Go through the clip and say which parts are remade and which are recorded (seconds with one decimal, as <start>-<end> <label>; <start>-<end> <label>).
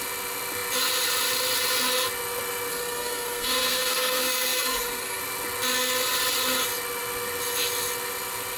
0.0-2.7 recorded; 2.7-5.2 remade; 5.2-8.6 recorded